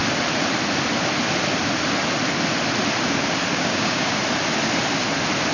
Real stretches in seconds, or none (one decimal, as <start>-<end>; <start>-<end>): 0.0-3.5; 4.2-5.5